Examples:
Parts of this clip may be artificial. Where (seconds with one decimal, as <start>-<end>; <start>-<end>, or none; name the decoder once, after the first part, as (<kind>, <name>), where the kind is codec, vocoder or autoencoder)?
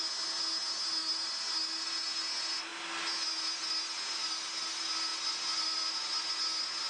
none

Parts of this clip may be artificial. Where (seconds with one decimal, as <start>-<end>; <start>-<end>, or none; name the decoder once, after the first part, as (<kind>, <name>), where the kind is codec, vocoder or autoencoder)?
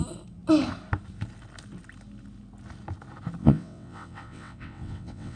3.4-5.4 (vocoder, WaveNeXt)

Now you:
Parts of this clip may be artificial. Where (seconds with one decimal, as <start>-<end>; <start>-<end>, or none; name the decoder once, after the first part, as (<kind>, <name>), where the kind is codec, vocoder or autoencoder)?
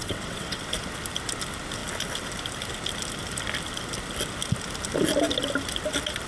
0.0-0.6 (vocoder, WaveNeXt)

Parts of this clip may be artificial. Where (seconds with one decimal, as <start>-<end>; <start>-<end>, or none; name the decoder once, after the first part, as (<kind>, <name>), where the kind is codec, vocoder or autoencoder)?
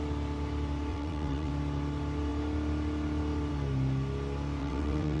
0.9-1.5 (vocoder, WaveNeXt); 4.6-5.2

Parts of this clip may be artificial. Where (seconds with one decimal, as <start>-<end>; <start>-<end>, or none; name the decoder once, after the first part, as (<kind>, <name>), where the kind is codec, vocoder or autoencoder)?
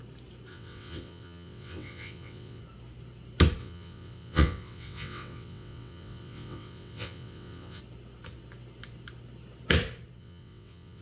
0.5-2.6 (vocoder, WaveNeXt); 3.6-7.8; 10.2-11.0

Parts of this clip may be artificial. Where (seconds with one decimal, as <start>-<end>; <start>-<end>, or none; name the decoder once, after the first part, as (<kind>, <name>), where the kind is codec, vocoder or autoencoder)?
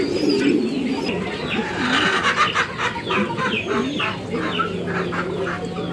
none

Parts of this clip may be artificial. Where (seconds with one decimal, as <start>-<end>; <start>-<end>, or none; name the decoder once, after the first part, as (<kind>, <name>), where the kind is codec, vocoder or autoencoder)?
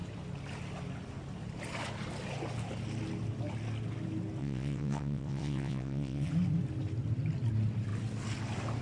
4.4-6.3 (vocoder, WaveNeXt)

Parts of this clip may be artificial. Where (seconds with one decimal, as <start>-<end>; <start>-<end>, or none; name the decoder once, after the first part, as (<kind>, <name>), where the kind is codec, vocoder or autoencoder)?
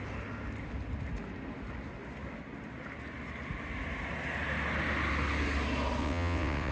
6.0-6.7 (vocoder, WaveNeXt)